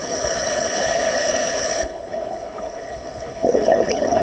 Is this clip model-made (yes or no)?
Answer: yes